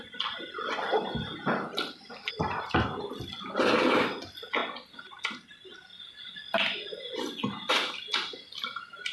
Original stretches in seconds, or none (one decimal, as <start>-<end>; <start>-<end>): 0.0-9.1